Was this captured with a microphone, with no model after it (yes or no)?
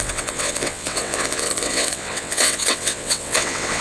no